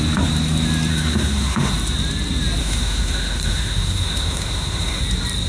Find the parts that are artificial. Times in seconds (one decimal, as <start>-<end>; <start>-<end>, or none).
0.9-1.7; 2.6-5.0